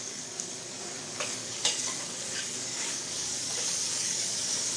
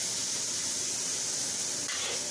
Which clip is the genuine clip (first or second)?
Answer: second